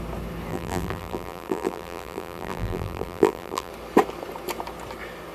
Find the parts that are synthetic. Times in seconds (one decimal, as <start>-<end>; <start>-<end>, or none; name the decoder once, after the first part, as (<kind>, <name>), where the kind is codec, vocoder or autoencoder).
0.5-3.7 (vocoder, BigVGAN v2)